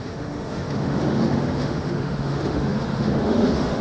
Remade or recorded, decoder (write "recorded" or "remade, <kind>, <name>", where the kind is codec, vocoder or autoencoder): remade, autoencoder, DAC-VAE